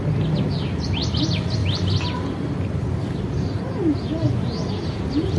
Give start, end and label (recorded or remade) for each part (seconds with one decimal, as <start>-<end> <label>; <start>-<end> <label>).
0.0-5.4 recorded